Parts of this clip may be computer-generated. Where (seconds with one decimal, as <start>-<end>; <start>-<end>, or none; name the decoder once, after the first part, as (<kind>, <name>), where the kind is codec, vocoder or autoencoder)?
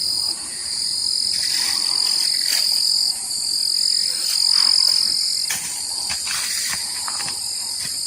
0.0-1.0 (vocoder, Vocos); 2.6-3.6